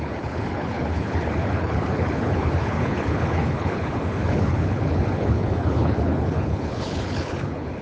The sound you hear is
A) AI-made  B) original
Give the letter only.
A